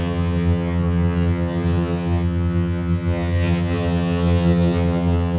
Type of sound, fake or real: fake